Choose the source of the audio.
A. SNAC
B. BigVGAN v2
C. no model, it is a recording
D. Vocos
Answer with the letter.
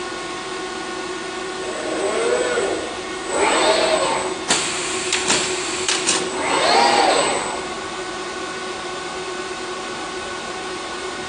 C